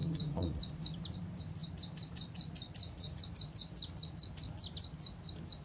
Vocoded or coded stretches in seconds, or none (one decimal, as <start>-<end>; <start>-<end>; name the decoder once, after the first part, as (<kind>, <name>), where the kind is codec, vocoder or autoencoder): 0.0-0.6 (vocoder, Vocos); 2.8-3.3